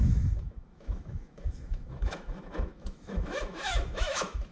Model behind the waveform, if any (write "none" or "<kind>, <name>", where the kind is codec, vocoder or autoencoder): autoencoder, DAC-VAE